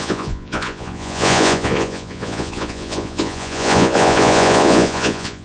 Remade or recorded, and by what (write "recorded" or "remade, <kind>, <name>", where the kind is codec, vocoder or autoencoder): remade, vocoder, Vocos